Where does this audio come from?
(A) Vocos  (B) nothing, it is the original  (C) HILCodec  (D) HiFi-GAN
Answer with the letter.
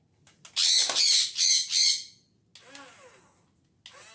B